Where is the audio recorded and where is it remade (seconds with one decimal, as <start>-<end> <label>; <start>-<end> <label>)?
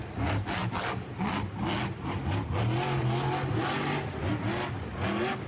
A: 0.0-5.5 recorded